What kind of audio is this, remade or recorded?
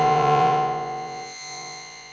remade